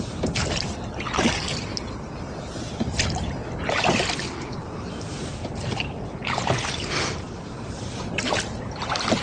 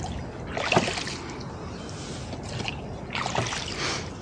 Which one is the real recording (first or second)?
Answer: second